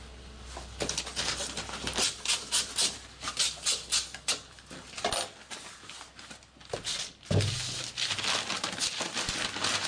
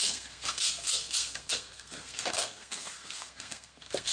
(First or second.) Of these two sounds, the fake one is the second